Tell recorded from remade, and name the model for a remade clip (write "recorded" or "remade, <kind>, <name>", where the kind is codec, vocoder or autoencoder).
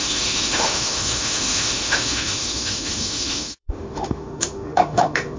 remade, autoencoder, DAC-VAE